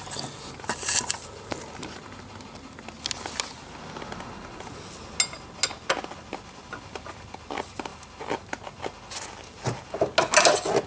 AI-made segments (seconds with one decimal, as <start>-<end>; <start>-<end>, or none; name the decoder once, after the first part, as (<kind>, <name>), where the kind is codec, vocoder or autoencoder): none

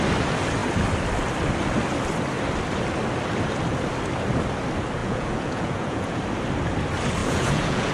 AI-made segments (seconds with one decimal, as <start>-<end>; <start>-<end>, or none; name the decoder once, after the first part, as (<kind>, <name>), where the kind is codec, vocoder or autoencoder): 5.0-6.2 (vocoder, Vocos); 7.2-7.9

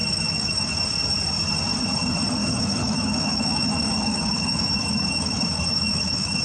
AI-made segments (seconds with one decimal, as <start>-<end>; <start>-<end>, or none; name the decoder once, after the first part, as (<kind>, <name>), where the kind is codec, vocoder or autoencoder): 0.0-0.7 (autoencoder, DAC-VAE); 2.4-6.4